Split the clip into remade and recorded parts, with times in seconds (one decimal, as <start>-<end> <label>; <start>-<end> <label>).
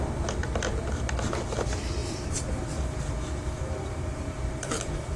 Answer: 0.0-2.0 recorded; 2.0-5.2 remade